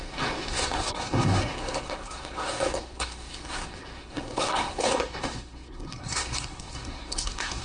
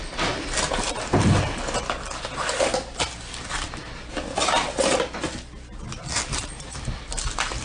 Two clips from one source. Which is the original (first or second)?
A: second